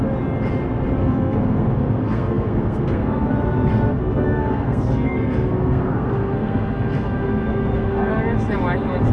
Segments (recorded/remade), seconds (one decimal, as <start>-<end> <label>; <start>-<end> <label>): 0.0-1.0 recorded; 1.0-3.3 remade; 3.3-3.9 recorded; 3.9-8.1 remade; 8.1-9.1 recorded